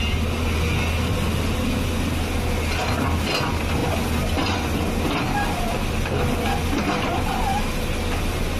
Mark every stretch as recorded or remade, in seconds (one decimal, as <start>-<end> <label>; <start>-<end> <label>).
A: 0.0-8.6 recorded